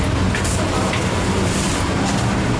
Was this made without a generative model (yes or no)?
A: yes